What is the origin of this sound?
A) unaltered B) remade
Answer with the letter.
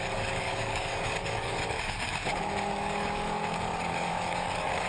B